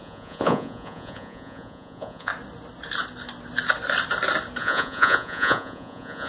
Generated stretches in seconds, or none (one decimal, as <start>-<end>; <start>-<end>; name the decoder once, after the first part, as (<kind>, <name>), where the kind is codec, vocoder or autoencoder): 0.0-2.3 (vocoder, Vocos); 4.6-6.3